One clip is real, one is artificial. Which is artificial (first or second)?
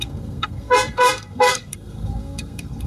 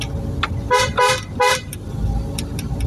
first